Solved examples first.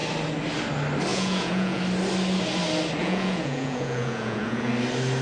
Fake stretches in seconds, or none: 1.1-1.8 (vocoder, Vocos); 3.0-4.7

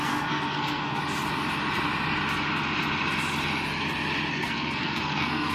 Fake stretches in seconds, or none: 0.0-1.0 (codec, SNAC); 4.3-5.5

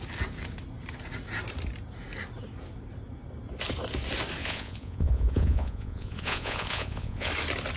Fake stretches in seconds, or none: 4.4-7.3 (vocoder, Vocos)

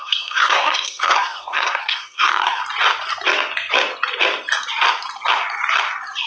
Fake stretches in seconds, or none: 0.0-2.6 (codec, SNAC)

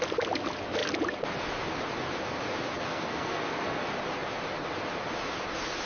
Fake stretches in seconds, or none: 2.9-3.8 (codec, SNAC)